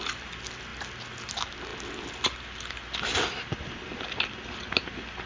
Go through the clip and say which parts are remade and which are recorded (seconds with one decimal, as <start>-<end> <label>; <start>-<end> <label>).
0.0-5.3 recorded